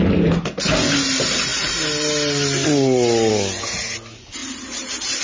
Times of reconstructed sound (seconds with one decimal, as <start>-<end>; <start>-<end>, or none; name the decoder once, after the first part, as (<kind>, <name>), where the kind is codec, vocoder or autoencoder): none